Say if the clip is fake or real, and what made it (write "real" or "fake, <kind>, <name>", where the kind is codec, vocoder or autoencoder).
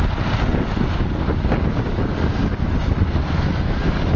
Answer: real